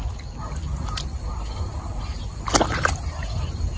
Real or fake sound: real